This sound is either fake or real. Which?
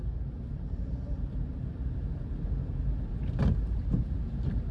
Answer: real